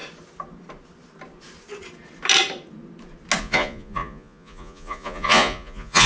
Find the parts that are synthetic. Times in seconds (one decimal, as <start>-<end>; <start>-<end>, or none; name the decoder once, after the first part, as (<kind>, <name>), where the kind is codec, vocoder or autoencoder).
3.4-6.1 (vocoder, Vocos)